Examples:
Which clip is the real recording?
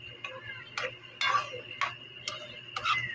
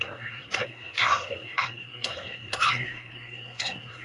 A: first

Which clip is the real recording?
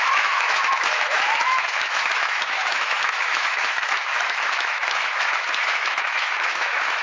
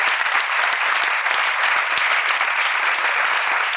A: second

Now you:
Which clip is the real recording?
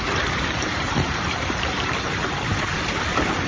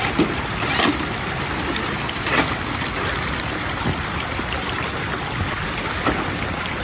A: second